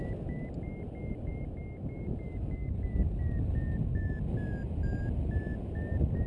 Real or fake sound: real